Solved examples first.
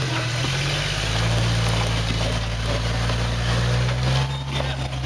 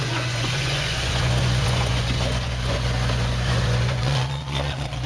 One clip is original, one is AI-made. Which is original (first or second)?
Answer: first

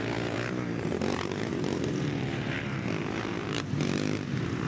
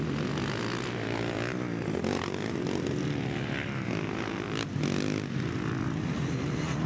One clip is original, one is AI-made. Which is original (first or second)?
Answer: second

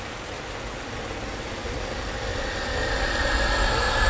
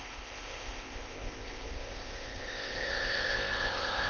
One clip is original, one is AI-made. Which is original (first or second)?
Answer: first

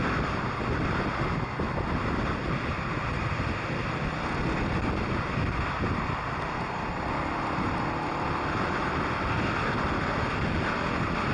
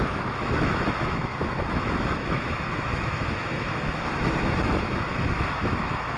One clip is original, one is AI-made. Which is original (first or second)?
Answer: first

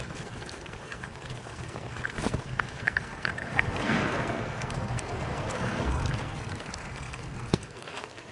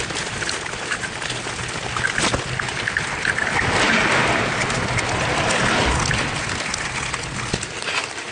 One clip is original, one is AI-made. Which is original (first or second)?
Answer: second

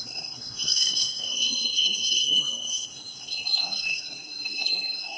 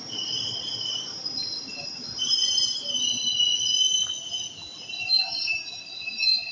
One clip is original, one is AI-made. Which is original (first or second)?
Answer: second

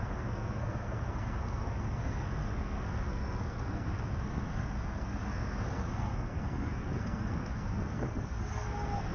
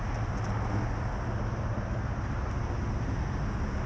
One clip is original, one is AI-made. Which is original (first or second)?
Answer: second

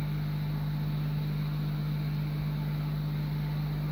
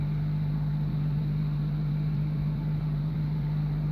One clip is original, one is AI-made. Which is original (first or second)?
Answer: first